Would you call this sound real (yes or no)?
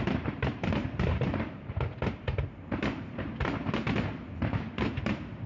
no